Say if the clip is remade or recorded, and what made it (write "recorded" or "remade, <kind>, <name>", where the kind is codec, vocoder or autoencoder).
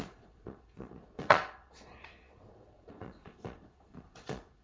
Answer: remade, vocoder, Vocos